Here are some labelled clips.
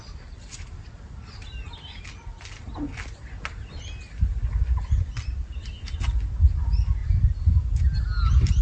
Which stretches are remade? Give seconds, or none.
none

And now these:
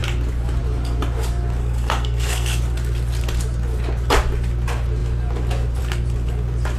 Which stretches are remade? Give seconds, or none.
1.6-2.6 (codec, SNAC)

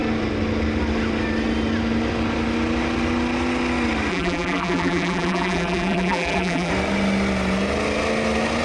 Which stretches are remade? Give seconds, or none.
4.1-6.7 (vocoder, BigVGAN v2)

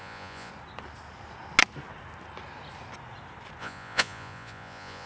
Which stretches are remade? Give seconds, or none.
0.0-0.5 (vocoder, Vocos); 3.6-5.1

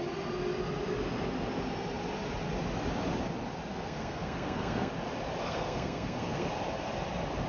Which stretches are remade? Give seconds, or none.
3.7-4.9 (codec, SNAC); 5.4-6.5

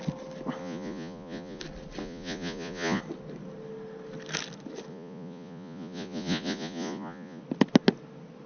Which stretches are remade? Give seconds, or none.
0.6-1.6 (vocoder, Vocos); 2.0-3.0; 4.9-7.4

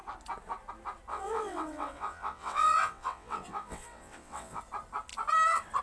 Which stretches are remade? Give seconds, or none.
1.1-4.6 (vocoder, WaveNeXt)